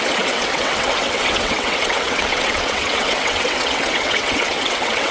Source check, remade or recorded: remade